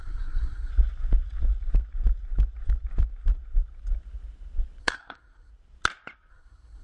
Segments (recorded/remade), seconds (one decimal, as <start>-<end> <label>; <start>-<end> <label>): 0.0-0.7 remade; 0.7-4.8 recorded; 4.8-5.5 remade; 5.5-6.3 recorded; 6.3-6.8 remade

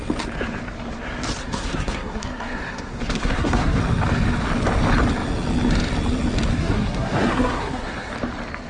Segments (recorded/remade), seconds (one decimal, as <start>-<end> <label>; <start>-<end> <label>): 0.0-1.4 recorded; 1.4-3.8 remade; 3.8-6.5 recorded; 6.5-8.1 remade; 8.1-8.7 recorded

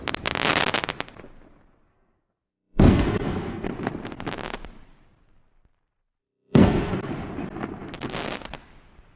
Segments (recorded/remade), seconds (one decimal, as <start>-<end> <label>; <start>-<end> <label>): 0.0-1.9 recorded; 1.9-3.7 remade; 3.7-6.2 recorded; 6.2-7.1 remade; 7.1-9.2 recorded

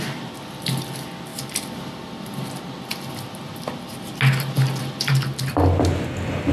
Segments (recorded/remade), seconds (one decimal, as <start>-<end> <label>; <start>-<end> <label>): 0.0-6.5 recorded

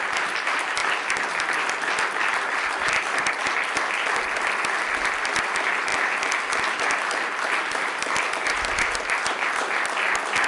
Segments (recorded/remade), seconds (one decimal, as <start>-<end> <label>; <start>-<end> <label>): 0.0-10.5 recorded

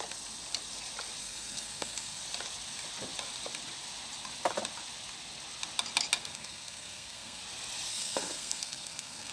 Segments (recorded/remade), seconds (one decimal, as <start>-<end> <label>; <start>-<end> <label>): 0.0-1.2 recorded; 1.2-2.2 remade; 2.2-6.2 recorded; 6.2-7.4 remade; 7.4-7.9 recorded; 7.9-9.3 remade

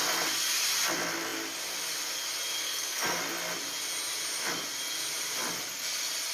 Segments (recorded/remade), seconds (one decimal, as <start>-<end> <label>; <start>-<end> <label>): 0.0-2.6 recorded; 2.6-3.2 remade; 3.2-6.3 recorded